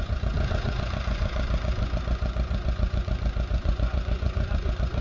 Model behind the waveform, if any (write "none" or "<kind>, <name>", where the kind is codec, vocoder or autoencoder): vocoder, Vocos